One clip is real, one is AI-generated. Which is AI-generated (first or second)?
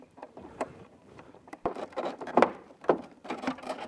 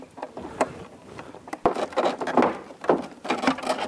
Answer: first